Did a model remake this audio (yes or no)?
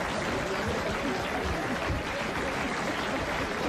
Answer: no